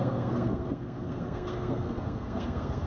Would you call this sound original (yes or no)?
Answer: no